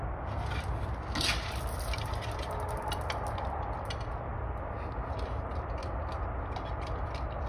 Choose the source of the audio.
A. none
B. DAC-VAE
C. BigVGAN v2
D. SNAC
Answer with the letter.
A